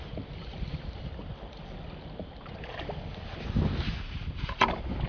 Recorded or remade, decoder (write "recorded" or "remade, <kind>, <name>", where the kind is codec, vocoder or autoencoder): recorded